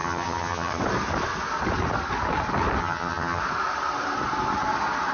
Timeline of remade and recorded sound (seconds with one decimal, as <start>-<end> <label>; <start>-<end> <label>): 0.0-0.8 remade; 0.8-2.8 recorded; 2.8-3.4 remade; 3.4-5.1 recorded